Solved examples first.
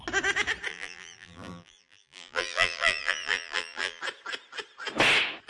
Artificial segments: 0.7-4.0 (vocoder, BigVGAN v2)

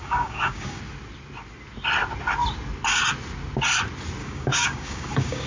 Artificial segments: 0.0-0.8 (codec, DAC); 4.2-5.5

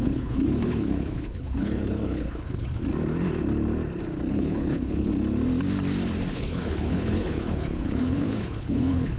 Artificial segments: 0.0-2.8 (codec, HILCodec); 4.3-5.1; 6.3-9.2

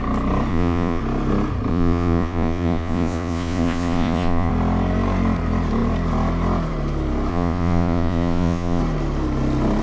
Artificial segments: 0.5-1.0 (vocoder, Vocos); 1.7-4.5; 7.3-8.8